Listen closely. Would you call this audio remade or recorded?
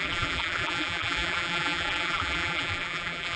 remade